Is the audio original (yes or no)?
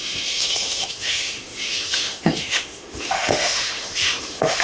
no